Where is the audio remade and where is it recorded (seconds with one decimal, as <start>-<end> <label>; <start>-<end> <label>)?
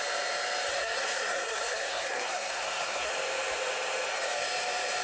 0.0-0.7 recorded; 0.7-3.1 remade; 3.1-5.0 recorded